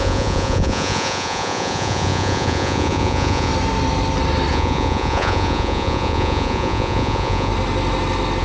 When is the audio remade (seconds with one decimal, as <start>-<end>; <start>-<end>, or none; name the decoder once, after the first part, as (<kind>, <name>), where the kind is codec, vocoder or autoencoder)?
0.0-3.5 (vocoder, Vocos); 4.5-7.5